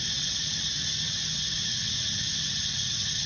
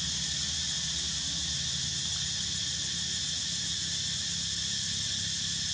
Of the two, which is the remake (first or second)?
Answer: first